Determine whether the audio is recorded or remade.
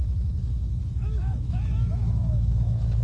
remade